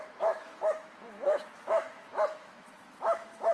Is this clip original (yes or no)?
no